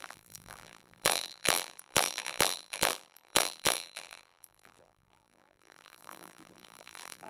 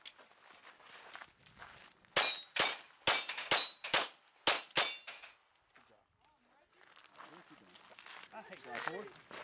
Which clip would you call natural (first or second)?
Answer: second